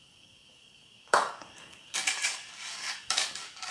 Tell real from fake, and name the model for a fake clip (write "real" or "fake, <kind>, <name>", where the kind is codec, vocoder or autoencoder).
fake, codec, DAC